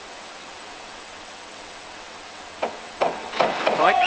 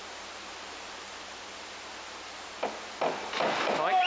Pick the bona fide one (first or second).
second